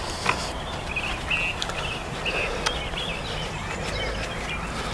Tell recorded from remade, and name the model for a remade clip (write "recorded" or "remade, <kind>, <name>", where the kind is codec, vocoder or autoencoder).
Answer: recorded